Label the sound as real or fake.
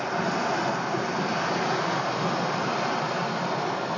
real